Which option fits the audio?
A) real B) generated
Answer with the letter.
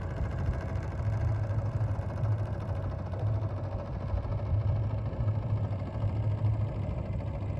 A